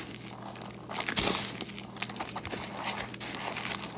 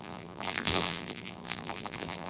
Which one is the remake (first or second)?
second